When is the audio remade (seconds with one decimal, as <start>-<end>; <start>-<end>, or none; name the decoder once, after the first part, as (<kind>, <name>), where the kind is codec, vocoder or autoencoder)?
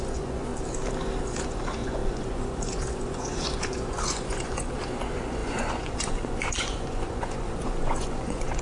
0.0-0.5 (vocoder, Vocos); 1.2-8.6